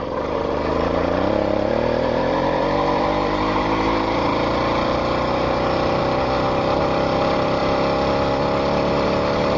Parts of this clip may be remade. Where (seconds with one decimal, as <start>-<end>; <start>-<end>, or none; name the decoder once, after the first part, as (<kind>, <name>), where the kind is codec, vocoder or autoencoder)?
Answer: 0.0-4.3 (vocoder, BigVGAN v2); 4.9-6.0; 6.8-7.6; 8.7-9.6